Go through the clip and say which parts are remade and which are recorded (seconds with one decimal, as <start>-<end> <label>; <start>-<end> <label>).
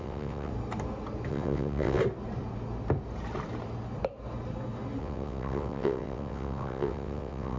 0.0-0.5 remade; 0.5-1.3 recorded; 1.3-2.0 remade; 2.0-5.0 recorded; 5.0-7.6 remade